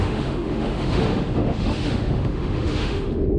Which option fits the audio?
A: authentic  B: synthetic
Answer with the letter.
B